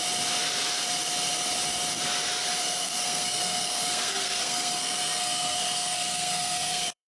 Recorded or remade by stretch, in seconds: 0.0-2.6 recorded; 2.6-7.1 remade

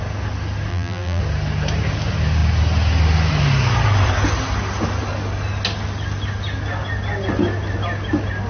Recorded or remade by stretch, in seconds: 0.0-0.7 recorded; 0.7-1.2 remade; 1.2-8.5 recorded

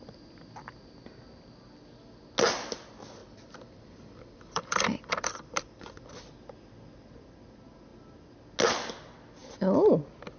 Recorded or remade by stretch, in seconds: 0.0-3.2 recorded; 3.2-6.0 remade; 6.0-10.4 recorded

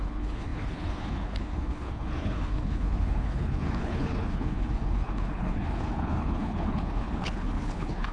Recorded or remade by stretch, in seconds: 0.0-8.1 remade

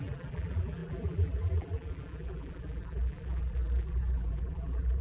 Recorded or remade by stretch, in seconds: 0.0-5.0 remade

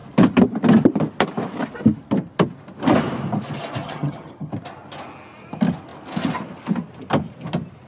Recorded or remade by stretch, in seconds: 0.0-3.8 recorded; 3.8-4.5 remade; 4.5-7.9 recorded

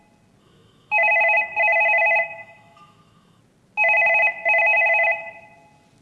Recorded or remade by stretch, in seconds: 0.0-0.4 recorded; 0.4-3.4 remade; 3.4-4.7 recorded; 4.7-5.3 remade; 5.3-6.0 recorded

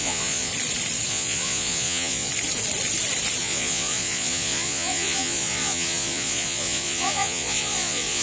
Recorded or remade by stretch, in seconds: 0.0-0.5 remade; 0.5-1.1 recorded; 1.1-2.3 remade; 2.3-3.4 recorded; 3.4-8.2 remade